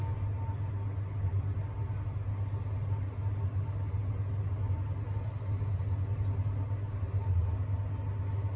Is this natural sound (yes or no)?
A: yes